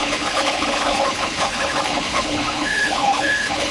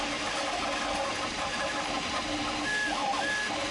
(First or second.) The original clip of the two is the second